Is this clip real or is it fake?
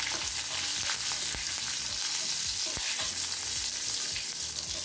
real